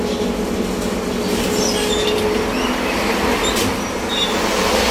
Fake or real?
real